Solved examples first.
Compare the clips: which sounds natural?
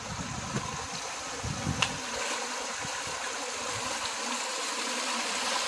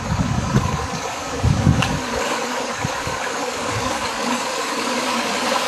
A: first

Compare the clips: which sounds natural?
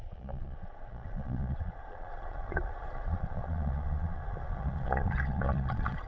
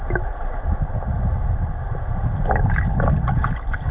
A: second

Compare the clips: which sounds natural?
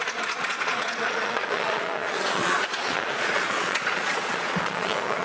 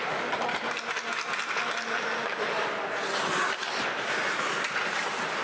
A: second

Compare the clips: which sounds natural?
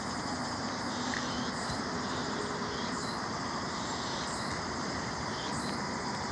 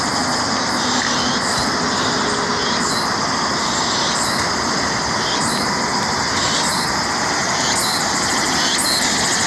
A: second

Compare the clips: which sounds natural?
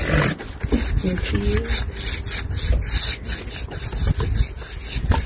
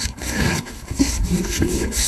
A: first